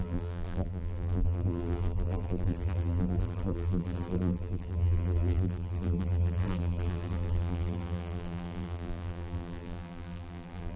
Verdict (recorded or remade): remade